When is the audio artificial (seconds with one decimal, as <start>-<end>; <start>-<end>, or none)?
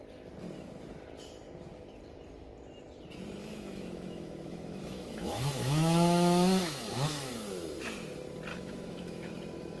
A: 3.4-7.3; 8.5-9.3